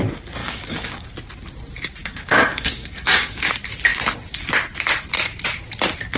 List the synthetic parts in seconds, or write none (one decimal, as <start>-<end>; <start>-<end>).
0.4-1.1; 2.0-3.5